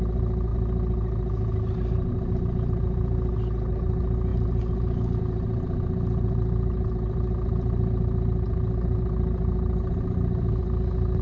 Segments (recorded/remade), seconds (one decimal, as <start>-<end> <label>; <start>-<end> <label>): 0.0-11.2 recorded